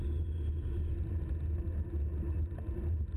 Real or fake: real